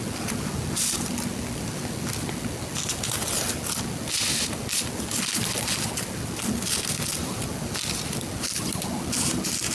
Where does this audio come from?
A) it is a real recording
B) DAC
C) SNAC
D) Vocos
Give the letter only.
A